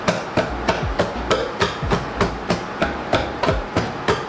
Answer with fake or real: real